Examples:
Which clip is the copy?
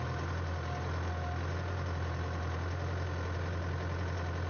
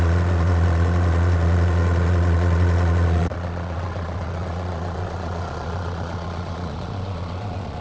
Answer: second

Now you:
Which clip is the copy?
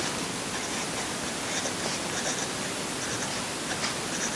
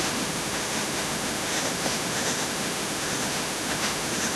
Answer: second